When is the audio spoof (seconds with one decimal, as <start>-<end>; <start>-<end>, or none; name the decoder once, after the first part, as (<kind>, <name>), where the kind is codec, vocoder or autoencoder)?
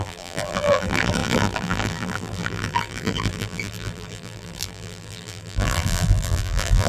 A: 0.0-6.9 (vocoder, BigVGAN v2)